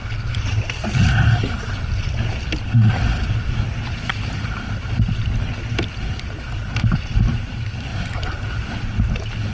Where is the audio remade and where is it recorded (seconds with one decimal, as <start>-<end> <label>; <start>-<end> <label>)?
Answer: 0.0-9.5 recorded